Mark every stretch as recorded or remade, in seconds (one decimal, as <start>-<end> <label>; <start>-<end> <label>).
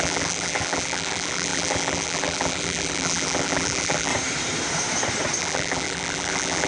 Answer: 0.0-4.1 remade; 4.1-5.4 recorded; 5.4-6.7 remade